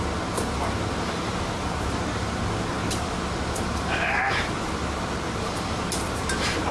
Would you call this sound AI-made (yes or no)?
yes